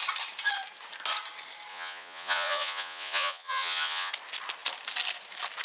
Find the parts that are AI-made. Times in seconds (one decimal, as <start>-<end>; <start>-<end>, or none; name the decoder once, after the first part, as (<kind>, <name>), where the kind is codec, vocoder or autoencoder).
1.7-4.1 (vocoder, Vocos)